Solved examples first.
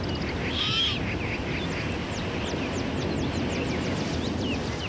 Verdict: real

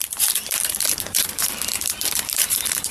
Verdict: fake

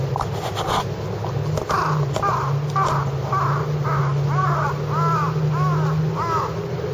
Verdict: real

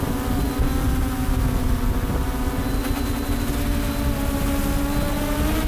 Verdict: real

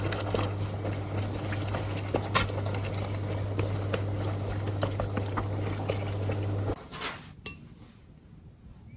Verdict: real